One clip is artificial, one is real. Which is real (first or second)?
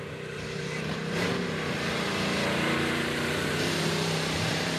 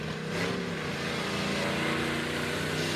second